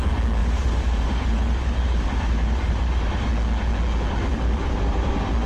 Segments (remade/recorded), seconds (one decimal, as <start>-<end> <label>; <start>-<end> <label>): 0.0-0.4 recorded; 0.4-3.3 remade; 3.3-4.3 recorded; 4.3-5.1 remade; 5.1-5.5 recorded